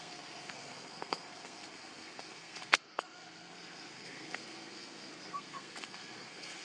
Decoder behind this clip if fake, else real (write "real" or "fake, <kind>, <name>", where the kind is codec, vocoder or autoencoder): fake, codec, SNAC